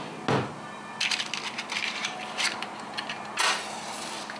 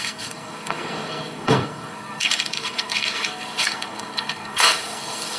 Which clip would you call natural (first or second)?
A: first